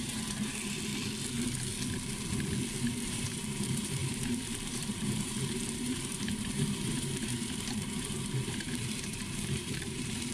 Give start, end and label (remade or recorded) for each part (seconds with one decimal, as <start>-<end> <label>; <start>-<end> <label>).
0.0-0.9 remade; 0.9-3.1 recorded; 3.1-10.3 remade